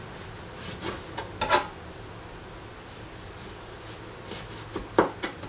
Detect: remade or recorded recorded